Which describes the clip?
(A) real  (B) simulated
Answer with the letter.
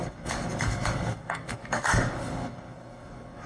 B